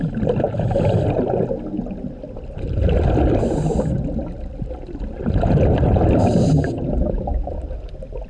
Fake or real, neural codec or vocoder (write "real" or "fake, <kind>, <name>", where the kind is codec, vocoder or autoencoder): real